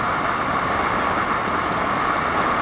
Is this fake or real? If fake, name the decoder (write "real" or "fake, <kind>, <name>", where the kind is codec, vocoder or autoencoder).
real